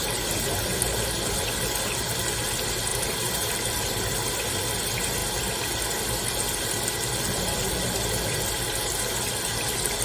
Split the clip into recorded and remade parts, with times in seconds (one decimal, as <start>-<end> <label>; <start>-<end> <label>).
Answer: 0.0-2.9 recorded; 2.9-4.0 remade; 4.0-10.0 recorded